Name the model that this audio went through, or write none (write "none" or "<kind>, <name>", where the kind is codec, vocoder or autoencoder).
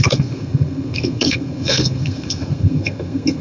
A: codec, SNAC